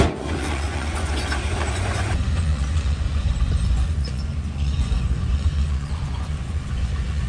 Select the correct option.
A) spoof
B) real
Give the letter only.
A